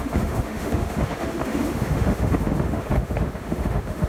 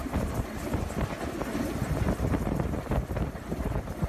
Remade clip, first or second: first